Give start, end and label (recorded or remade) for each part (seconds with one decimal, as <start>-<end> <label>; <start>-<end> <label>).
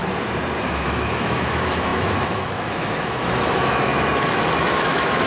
0.0-0.6 recorded; 0.6-3.9 remade; 3.9-4.6 recorded; 4.6-5.3 remade